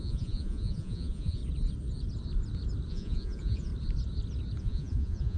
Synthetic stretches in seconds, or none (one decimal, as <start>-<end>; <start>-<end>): 0.0-1.4; 2.9-3.7; 4.6-5.4